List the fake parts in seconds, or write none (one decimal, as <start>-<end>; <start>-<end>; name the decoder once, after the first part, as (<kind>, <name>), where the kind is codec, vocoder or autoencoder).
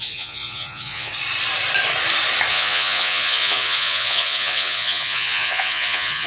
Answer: 0.0-1.1 (vocoder, Vocos); 2.5-6.3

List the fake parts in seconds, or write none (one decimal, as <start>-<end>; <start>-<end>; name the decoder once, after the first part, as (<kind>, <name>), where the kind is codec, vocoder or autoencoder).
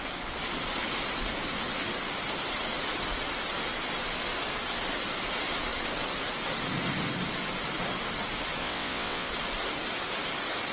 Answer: 8.6-9.3 (vocoder, WaveNeXt)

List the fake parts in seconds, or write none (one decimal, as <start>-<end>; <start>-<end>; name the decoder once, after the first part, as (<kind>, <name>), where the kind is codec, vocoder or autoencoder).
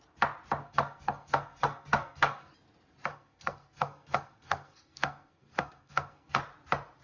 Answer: 0.6-2.5 (codec, SNAC); 3.1-6.4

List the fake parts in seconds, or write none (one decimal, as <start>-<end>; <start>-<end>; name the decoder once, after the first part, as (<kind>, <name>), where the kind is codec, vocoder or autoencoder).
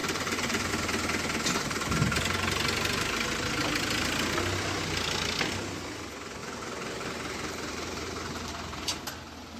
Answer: 0.0-0.7 (vocoder, BigVGAN v2); 6.4-9.0